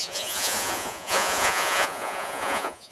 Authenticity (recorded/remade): remade